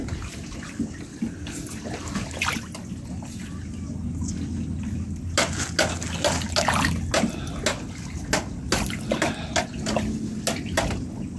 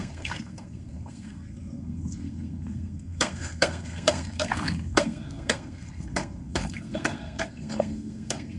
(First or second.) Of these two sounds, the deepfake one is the second